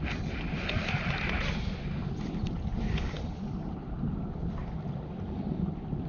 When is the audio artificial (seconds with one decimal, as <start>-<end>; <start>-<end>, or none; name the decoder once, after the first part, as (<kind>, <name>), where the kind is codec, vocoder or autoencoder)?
none